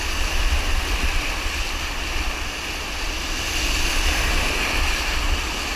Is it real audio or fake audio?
real